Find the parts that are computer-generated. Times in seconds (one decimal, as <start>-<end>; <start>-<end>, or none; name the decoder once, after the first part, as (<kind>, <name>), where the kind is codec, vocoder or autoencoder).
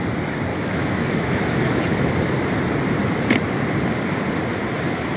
0.5-2.1 (autoencoder, DAC-VAE)